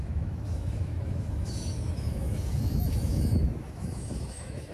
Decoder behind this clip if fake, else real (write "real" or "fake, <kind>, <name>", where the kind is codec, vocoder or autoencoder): fake, autoencoder, DAC-VAE